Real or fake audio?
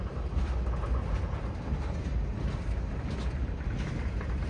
real